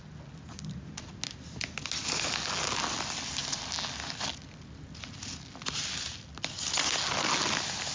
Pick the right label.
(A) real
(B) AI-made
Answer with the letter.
A